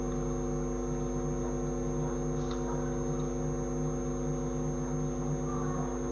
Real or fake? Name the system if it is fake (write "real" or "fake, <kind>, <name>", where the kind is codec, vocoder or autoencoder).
real